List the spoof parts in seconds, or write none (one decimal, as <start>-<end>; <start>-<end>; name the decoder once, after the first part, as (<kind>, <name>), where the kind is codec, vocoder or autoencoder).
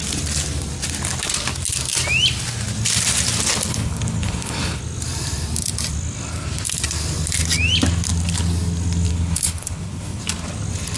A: 3.7-4.8 (codec, HILCodec); 9.1-10.2